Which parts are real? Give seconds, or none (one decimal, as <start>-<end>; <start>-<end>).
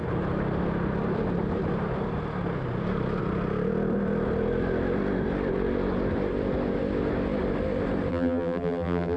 0.0-8.1